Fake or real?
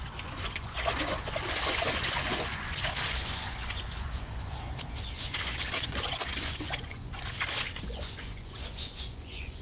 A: fake